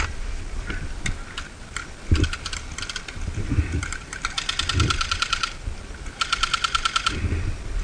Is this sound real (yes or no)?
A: yes